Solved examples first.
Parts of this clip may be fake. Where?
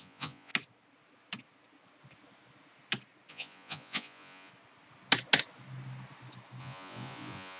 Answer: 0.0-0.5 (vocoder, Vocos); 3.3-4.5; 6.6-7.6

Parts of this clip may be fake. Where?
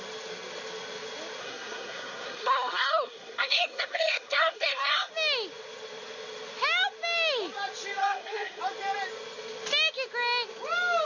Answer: 1.4-5.1 (codec, SNAC); 8.0-8.6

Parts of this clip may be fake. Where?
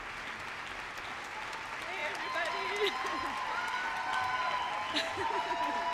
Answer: none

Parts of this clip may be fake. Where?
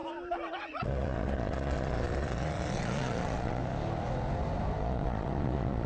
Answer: 0.5-3.6 (vocoder, Vocos); 4.8-5.9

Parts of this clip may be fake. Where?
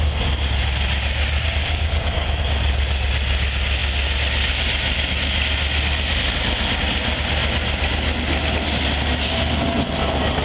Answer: 1.6-2.4 (codec, DAC)